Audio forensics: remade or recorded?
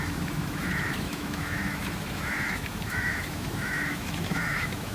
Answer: remade